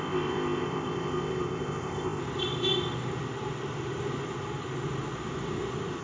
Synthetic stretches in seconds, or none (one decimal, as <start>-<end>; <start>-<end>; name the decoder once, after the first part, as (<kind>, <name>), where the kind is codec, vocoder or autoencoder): 0.0-2.2 (codec, ZipCodec)